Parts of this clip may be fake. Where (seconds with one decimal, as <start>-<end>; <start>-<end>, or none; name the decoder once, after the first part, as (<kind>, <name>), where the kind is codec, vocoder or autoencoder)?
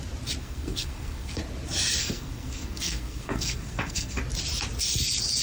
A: 0.4-1.4 (codec, SNAC); 2.0-4.2